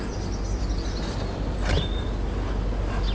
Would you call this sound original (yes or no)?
yes